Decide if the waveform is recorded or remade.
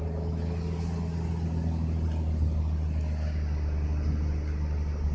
recorded